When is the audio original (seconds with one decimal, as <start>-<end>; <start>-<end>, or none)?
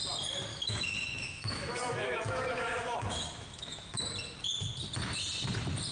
0.0-0.5; 4.0-5.9